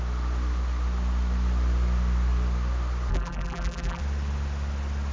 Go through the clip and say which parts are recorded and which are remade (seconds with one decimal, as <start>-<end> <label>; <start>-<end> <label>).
0.0-3.1 recorded; 3.1-4.0 remade; 4.0-5.1 recorded